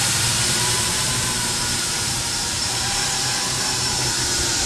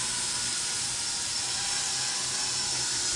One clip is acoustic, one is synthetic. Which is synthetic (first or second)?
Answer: first